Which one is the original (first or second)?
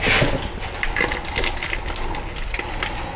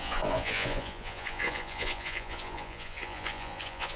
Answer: first